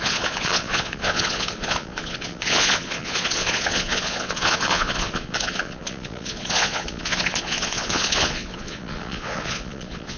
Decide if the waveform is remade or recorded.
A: remade